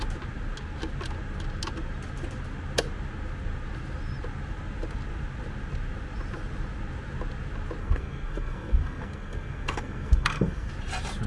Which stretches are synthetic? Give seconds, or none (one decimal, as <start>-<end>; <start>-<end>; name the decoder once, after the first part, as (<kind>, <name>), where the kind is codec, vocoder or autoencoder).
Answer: 7.8-10.7 (codec, SNAC)